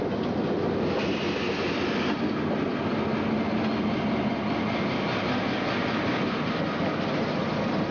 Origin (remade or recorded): recorded